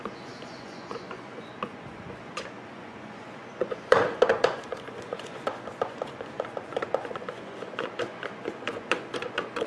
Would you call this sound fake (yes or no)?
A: yes